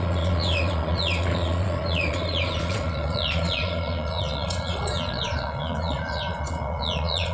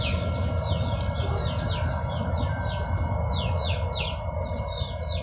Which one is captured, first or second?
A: second